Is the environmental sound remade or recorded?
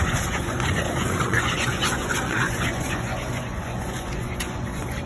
remade